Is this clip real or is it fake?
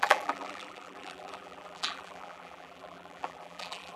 fake